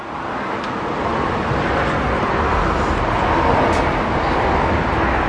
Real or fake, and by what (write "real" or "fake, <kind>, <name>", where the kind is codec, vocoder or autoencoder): real